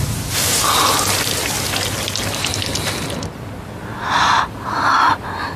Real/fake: real